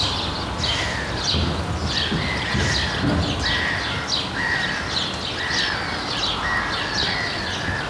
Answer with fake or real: real